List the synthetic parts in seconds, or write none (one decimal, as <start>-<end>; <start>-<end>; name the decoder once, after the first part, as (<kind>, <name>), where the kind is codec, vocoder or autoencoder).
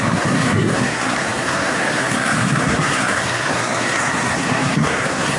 0.0-5.4 (codec, SNAC)